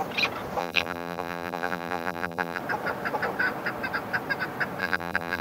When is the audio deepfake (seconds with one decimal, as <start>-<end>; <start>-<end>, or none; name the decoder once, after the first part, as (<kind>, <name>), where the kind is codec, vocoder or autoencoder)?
0.6-2.6 (vocoder, BigVGAN v2); 4.8-5.4

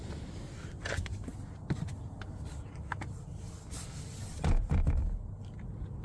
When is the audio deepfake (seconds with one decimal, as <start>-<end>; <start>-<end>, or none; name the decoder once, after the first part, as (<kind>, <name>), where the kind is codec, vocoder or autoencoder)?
none

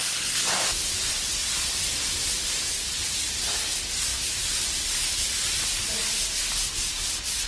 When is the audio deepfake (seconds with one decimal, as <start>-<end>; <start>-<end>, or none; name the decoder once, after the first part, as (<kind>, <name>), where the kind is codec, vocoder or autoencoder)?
4.1-4.9 (vocoder, BigVGAN v2); 6.0-7.5

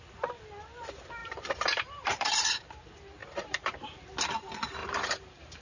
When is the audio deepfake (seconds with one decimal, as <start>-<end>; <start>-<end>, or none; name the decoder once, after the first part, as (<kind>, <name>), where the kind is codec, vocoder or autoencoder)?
1.2-2.8 (vocoder, BigVGAN v2); 3.2-3.8; 4.8-5.6

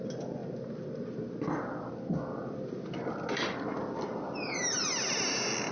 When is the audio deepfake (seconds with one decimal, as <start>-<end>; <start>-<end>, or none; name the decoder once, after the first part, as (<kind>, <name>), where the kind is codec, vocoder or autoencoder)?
none

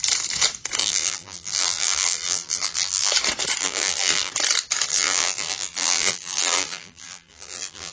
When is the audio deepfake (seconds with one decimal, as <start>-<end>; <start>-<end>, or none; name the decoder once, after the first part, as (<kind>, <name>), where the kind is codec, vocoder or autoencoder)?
0.8-3.1 (vocoder, BigVGAN v2); 3.6-4.3; 4.9-7.9

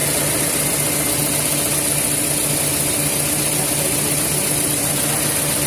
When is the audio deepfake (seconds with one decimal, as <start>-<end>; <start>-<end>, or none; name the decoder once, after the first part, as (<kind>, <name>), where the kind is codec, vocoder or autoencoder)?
none